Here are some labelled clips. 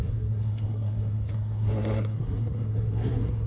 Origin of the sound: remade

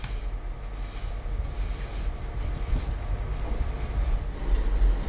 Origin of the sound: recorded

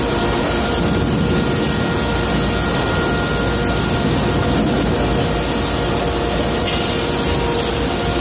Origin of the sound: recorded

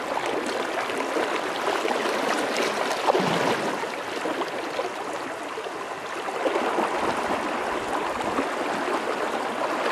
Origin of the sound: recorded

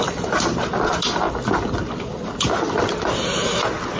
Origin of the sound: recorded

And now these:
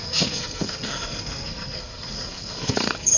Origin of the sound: remade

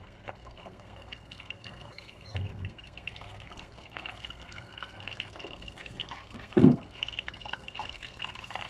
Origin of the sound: remade